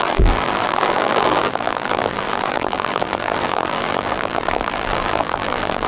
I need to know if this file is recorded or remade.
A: remade